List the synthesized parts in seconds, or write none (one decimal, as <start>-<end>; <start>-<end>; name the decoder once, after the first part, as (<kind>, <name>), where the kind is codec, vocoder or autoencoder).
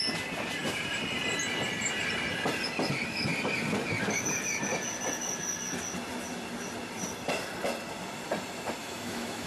8.8-9.5 (autoencoder, DAC-VAE)